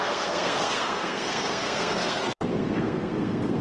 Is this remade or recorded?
remade